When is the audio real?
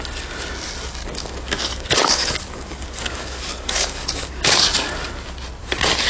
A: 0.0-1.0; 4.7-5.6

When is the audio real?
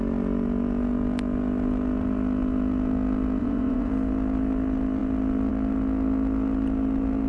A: 0.0-3.4; 3.9-7.3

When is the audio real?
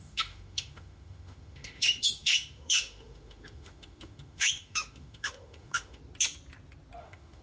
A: 6.0-7.0